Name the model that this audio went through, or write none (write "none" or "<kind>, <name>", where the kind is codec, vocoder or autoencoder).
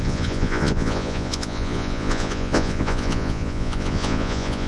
vocoder, Vocos